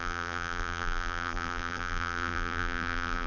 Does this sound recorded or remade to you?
remade